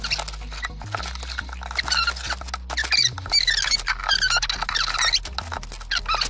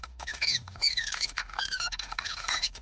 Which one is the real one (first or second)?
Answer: first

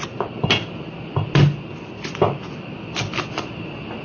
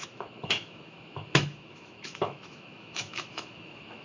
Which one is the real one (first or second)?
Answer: first